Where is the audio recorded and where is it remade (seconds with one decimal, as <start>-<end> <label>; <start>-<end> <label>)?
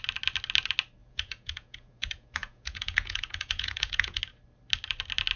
0.0-1.0 recorded; 1.0-4.2 remade; 4.2-5.4 recorded